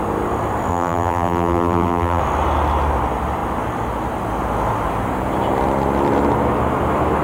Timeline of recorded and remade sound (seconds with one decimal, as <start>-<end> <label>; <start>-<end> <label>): 0.0-0.7 recorded; 0.7-2.2 remade; 2.2-7.2 recorded